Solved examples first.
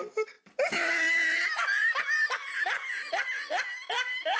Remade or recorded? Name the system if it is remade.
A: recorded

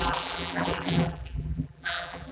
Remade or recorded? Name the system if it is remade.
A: remade, vocoder, BigVGAN v2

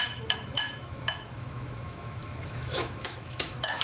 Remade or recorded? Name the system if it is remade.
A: remade, autoencoder, DAC-VAE